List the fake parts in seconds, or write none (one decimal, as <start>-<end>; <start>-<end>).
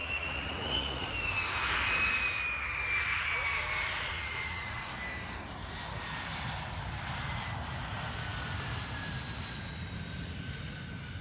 0.0-1.1; 4.1-4.9